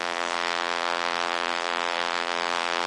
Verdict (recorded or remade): remade